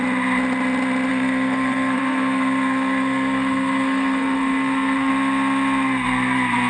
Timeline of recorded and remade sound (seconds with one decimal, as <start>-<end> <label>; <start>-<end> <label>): 0.0-1.1 recorded; 1.1-5.1 remade; 5.1-6.7 recorded